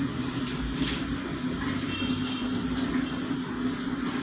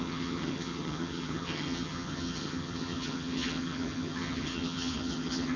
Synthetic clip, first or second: second